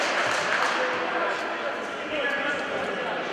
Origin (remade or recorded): recorded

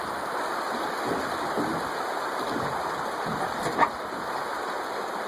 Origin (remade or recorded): recorded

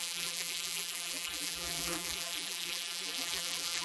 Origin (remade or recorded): remade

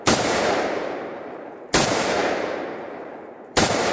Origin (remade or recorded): remade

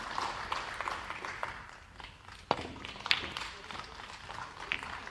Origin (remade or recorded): recorded